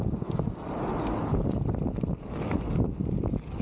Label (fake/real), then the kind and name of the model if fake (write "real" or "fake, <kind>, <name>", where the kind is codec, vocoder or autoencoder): real